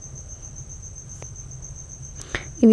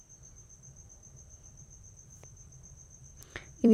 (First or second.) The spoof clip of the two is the second